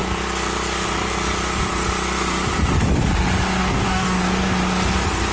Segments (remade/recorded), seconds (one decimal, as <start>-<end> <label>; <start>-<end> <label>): 0.0-3.6 recorded; 3.6-4.2 remade; 4.2-5.3 recorded